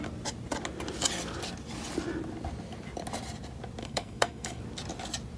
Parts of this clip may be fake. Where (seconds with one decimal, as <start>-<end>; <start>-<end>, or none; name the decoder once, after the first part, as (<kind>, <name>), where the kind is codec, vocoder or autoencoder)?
3.8-4.6 (codec, SNAC)